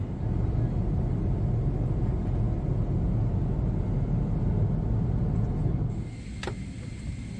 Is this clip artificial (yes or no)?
no